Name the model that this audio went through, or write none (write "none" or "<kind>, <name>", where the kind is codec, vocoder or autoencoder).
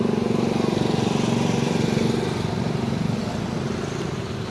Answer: none